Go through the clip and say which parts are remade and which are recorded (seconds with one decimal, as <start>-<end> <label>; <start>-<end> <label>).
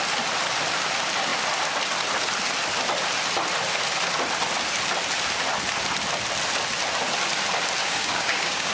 0.0-7.8 recorded; 7.8-8.7 remade